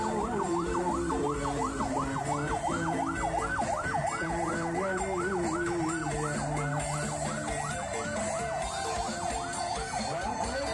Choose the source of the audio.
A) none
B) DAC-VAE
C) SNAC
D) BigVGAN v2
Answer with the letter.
A